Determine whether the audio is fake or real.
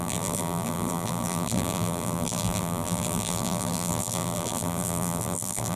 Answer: fake